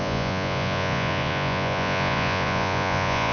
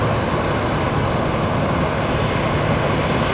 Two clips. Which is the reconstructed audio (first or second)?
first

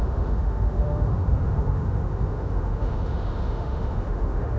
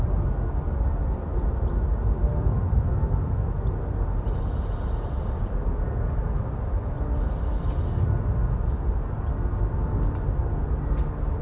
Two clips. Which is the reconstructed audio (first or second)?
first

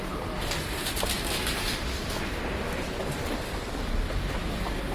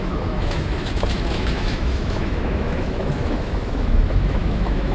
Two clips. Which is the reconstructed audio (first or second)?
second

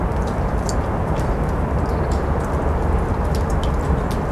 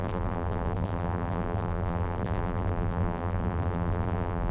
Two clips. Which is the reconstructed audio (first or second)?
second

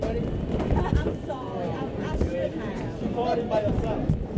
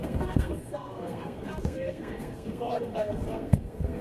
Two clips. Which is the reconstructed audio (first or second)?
second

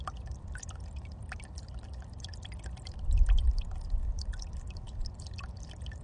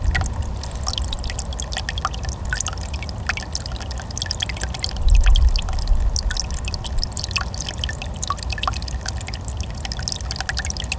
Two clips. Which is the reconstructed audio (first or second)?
first